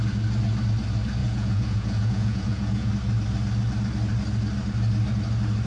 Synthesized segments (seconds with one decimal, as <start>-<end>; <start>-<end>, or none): 1.2-2.9